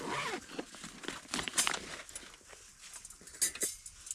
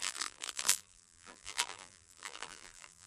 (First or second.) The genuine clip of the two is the first